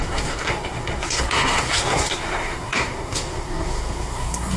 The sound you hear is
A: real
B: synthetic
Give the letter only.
B